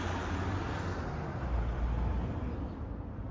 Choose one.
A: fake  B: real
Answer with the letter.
B